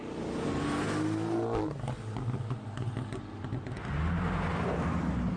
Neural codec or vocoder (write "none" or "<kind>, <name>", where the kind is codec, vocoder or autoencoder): none